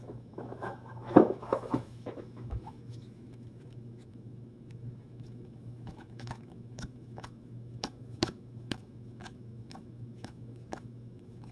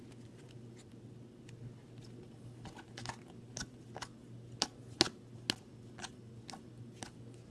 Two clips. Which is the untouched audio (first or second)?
second